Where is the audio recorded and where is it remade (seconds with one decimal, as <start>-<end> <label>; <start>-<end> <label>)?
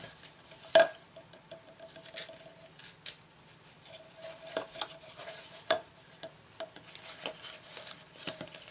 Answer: 0.0-5.2 recorded; 5.2-5.9 remade; 5.9-8.7 recorded